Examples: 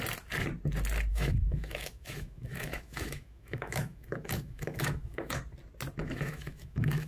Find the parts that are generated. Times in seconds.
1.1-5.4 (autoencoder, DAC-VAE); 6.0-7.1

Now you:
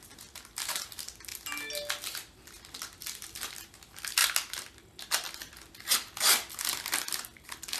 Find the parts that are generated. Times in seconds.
none

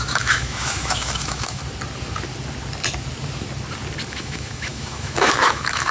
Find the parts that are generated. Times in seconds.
0.0-1.6 (autoencoder, DAC-VAE); 4.1-5.9

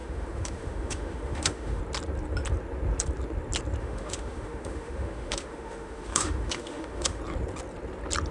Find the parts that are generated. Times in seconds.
0.0-1.8 (autoencoder, DAC-VAE); 3.8-7.2

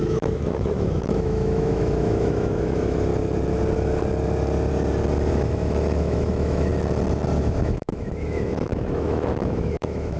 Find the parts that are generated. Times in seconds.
0.0-3.1 (autoencoder, DAC-VAE); 5.3-6.7; 7.4-10.2

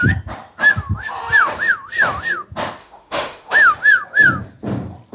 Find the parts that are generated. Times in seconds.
2.8-3.8 (autoencoder, DAC-VAE)